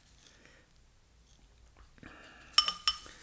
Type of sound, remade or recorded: recorded